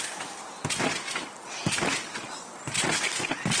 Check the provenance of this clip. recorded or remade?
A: recorded